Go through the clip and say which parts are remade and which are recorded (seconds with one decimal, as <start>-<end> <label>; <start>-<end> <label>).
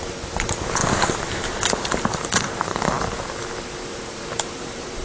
0.0-5.0 remade